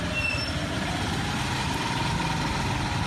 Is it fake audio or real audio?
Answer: real